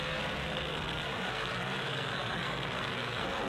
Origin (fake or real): fake